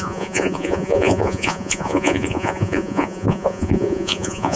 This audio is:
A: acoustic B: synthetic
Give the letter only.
B